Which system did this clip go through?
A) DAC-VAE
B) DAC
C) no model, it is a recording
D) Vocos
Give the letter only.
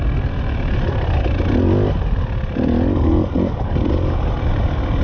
C